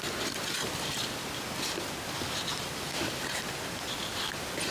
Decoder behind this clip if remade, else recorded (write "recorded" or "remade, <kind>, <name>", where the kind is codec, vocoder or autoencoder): recorded